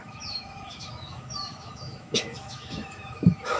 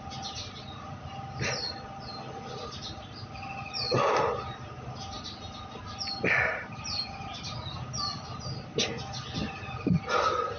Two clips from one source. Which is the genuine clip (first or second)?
second